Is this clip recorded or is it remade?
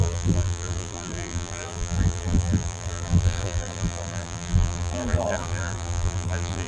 remade